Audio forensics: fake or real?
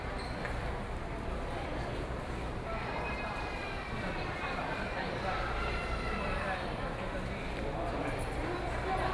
fake